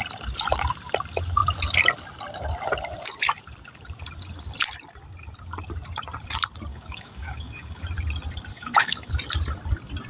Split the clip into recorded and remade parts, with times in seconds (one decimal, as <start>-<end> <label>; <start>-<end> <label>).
0.0-6.7 recorded; 6.7-7.8 remade; 7.8-8.5 recorded; 8.5-9.1 remade; 9.1-10.1 recorded